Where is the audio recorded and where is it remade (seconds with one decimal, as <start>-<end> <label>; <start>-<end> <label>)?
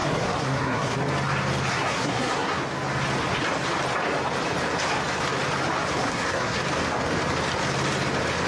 0.0-1.0 remade; 1.0-1.7 recorded; 1.7-2.6 remade; 2.6-6.0 recorded; 6.0-6.6 remade; 6.6-8.5 recorded